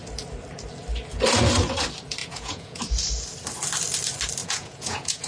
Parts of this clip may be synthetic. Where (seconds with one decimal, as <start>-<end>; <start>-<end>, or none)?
2.2-2.8; 4.4-5.3